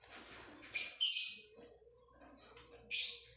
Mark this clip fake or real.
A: real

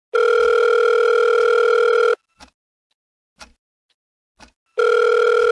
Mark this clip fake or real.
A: real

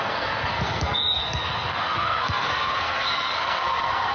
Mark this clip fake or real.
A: fake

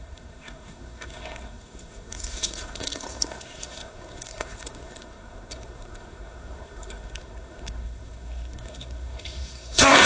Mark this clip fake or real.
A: fake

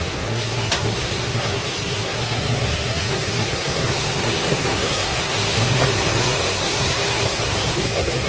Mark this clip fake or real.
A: fake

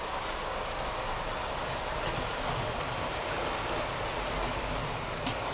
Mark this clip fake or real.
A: real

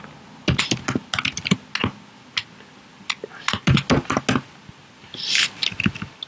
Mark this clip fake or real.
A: real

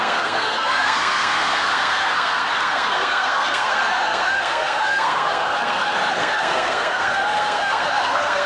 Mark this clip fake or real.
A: fake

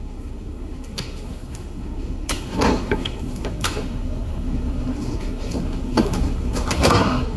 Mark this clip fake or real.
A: fake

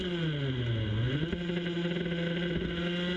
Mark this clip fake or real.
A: real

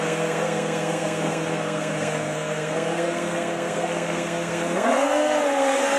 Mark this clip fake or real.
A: fake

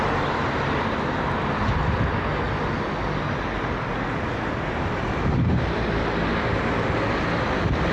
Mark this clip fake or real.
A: real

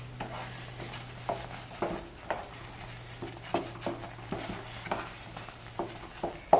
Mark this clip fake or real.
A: real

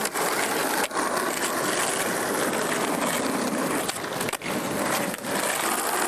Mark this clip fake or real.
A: real